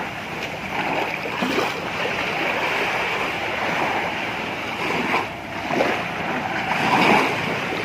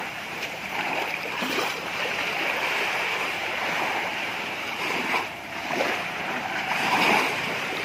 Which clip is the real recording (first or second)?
first